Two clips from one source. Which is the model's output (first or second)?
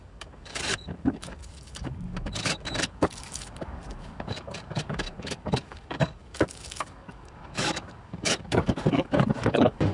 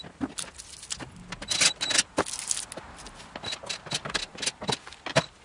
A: first